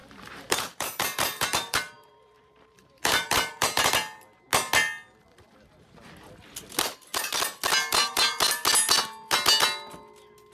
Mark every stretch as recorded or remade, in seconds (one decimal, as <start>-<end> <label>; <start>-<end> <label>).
0.0-3.9 remade; 3.9-10.5 recorded

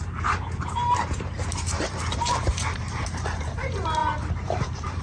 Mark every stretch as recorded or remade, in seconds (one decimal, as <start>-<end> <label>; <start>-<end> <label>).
0.0-5.0 remade

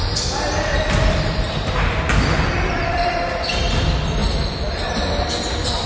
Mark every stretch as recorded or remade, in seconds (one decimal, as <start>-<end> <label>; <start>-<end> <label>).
0.0-0.7 recorded; 0.7-3.3 remade; 3.3-4.2 recorded; 4.2-4.9 remade; 4.9-5.9 recorded

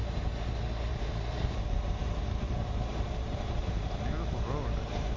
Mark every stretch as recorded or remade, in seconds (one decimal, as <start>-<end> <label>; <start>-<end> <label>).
0.0-0.5 remade; 0.5-0.9 recorded; 0.9-4.0 remade; 4.0-5.2 recorded

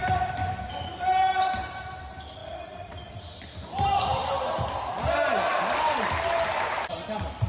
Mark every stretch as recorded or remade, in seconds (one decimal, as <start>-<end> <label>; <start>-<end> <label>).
0.0-0.5 recorded; 0.5-7.5 remade

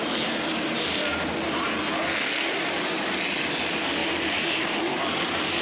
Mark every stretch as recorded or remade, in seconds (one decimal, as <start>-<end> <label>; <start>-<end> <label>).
0.0-1.0 remade; 1.0-3.6 recorded; 3.6-5.6 remade

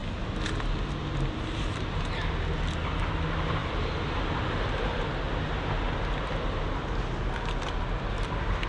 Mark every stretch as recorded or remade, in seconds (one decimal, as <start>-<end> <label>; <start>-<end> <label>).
0.0-8.7 recorded